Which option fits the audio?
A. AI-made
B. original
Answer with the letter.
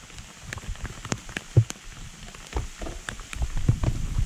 B